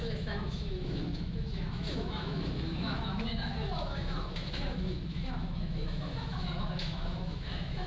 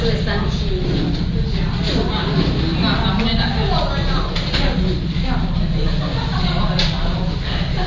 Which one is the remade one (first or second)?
first